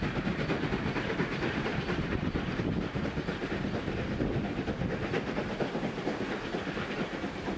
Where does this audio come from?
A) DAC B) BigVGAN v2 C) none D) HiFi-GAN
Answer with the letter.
B